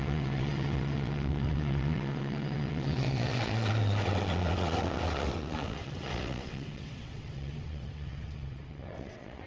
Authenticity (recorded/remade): remade